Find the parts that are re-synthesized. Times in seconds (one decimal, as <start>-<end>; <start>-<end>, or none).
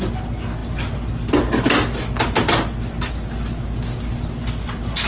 none